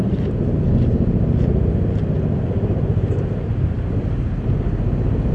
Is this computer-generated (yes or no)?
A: no